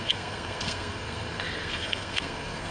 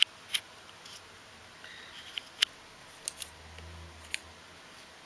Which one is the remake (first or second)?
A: first